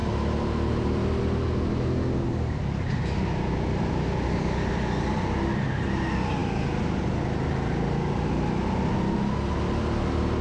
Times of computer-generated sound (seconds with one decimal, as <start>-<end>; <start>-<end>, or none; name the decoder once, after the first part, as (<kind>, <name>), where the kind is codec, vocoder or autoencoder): none